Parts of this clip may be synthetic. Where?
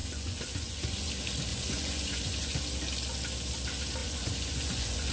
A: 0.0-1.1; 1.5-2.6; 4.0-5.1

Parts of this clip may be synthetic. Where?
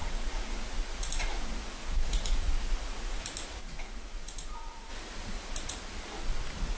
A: 0.0-3.2; 3.6-4.9